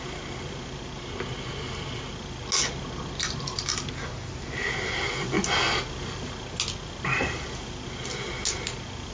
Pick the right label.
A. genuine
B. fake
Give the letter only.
A